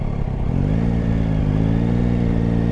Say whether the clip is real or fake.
real